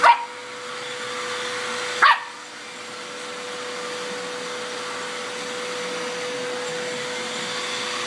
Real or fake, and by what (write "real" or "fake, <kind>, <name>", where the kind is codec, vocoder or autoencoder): real